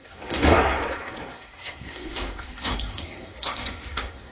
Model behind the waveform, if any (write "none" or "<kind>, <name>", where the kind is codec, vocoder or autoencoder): codec, SNAC